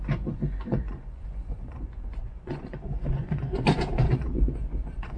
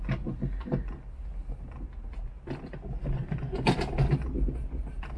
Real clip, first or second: second